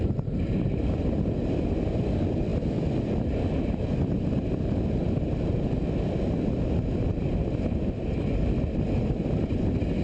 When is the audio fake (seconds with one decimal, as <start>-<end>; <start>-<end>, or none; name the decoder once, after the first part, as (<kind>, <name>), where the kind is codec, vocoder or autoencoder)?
none